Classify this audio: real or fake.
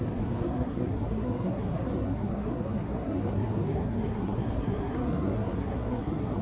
fake